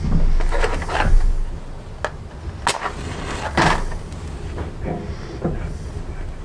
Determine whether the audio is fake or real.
real